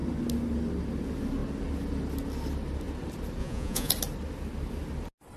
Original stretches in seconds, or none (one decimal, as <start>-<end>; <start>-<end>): 0.0-3.4; 3.9-5.4